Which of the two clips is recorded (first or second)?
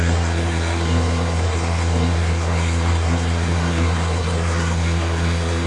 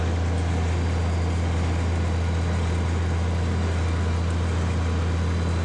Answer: second